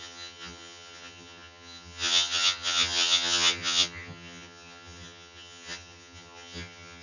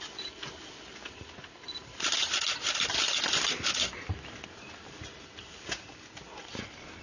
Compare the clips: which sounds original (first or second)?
second